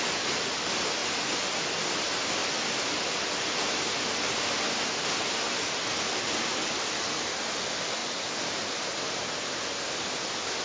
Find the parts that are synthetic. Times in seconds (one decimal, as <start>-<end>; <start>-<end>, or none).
8.0-9.3